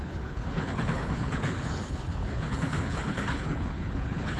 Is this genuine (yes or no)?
no